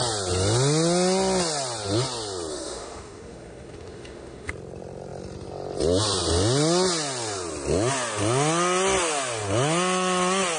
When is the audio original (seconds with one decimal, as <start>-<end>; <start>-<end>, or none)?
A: 0.0-2.5; 4.5-10.6